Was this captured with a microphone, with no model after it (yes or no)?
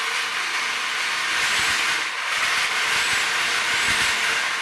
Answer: yes